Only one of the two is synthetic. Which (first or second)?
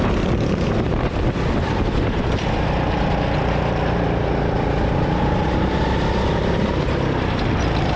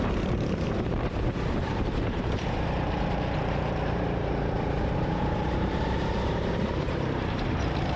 second